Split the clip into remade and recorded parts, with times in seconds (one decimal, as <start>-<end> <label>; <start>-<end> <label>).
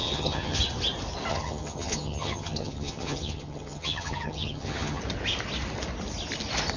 0.0-0.6 remade; 0.6-1.3 recorded; 1.3-5.0 remade; 5.0-6.8 recorded